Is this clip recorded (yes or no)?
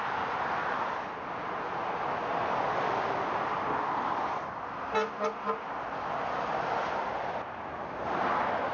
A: yes